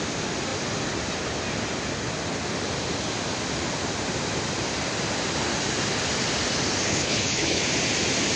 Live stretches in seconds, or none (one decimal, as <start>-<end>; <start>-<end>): 0.0-6.9; 7.6-8.4